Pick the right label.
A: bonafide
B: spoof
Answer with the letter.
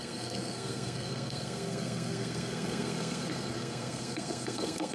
B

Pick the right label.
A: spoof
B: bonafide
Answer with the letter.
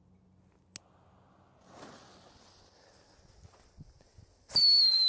B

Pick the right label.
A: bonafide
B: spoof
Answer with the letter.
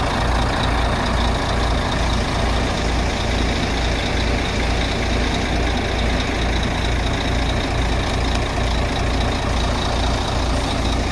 A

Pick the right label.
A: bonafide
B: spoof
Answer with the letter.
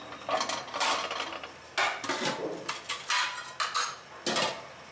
A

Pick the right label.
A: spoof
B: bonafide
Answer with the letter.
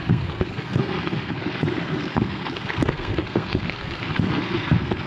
A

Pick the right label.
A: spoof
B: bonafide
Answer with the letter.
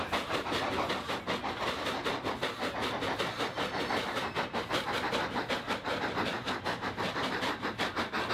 B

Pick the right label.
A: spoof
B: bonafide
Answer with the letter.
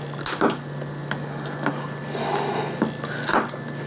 B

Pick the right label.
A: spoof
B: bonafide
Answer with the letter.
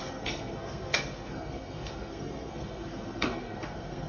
A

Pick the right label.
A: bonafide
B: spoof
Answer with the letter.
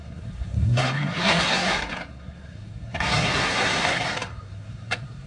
B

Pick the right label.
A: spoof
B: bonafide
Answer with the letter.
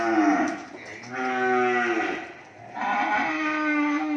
B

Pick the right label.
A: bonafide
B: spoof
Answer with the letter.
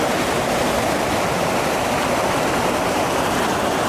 A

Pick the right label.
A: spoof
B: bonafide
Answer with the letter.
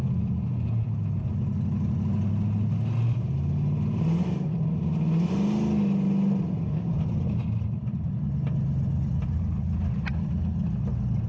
B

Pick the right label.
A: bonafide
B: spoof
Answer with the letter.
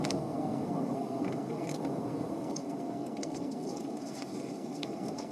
B